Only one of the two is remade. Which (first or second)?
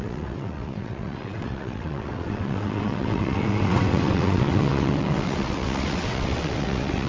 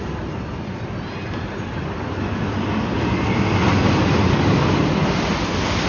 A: first